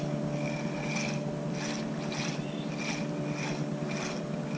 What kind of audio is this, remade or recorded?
recorded